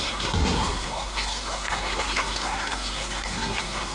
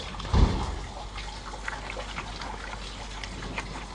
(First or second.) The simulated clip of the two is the first